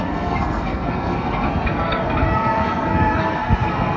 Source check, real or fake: fake